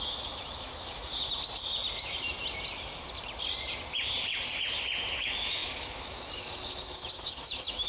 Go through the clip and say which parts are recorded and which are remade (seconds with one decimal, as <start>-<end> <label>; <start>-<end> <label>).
0.0-1.1 remade; 1.1-5.1 recorded; 5.1-7.9 remade